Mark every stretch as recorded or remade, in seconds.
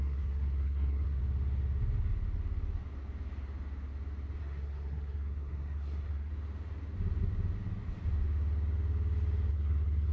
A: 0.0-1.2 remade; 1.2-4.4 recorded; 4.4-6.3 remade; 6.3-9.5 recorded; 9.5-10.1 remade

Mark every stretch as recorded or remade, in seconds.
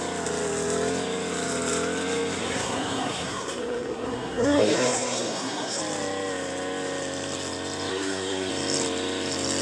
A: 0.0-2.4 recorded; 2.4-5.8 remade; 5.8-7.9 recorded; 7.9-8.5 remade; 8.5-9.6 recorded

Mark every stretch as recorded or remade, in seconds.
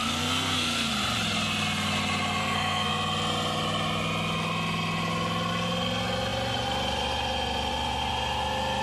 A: 0.0-0.9 remade; 0.9-2.4 recorded; 2.4-2.9 remade; 2.9-8.8 recorded